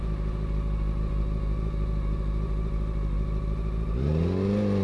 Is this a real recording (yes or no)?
yes